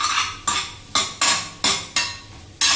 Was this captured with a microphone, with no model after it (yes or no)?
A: yes